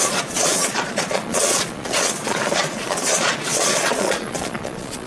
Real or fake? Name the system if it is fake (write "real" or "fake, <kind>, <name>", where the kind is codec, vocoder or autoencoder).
fake, vocoder, Vocos